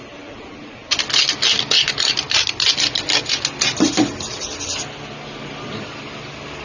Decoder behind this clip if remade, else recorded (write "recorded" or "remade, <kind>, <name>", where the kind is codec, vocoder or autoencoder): recorded